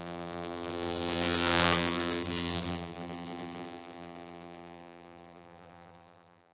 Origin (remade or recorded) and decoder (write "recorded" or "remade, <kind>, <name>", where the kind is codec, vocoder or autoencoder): remade, vocoder, BigVGAN v2